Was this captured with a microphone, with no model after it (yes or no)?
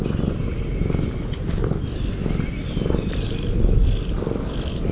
yes